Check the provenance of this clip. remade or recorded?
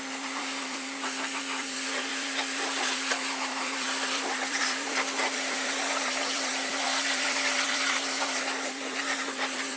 remade